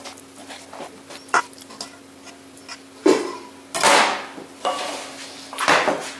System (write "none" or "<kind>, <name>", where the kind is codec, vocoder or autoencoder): none